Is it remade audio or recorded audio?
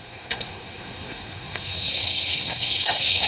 remade